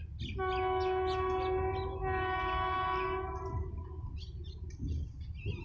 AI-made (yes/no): no